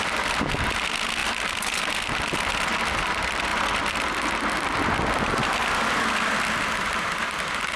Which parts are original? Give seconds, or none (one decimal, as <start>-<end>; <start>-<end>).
0.0-1.2; 2.9-3.5; 4.9-7.8